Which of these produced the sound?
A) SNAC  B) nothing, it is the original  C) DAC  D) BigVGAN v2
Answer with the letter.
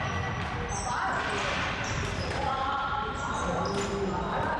D